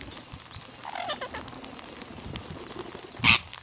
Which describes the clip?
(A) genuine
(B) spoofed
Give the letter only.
A